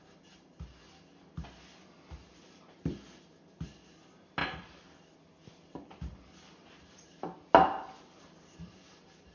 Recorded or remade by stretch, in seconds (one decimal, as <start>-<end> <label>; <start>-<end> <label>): 0.0-9.3 recorded